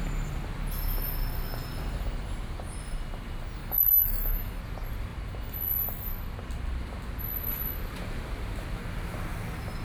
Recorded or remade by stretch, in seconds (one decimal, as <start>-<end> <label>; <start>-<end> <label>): 0.0-3.6 recorded; 3.6-4.6 remade; 4.6-9.8 recorded